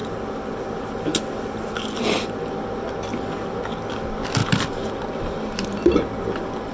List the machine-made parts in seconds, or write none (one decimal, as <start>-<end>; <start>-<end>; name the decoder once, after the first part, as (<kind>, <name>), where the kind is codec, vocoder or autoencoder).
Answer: none